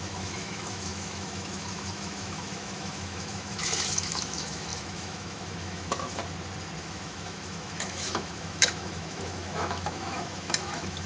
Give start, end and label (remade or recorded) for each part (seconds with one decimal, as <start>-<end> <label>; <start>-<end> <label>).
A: 0.0-6.2 remade; 6.2-6.8 recorded; 6.8-11.1 remade